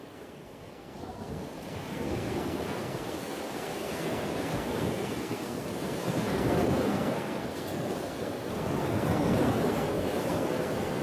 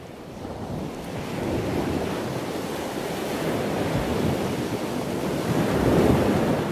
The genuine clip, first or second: second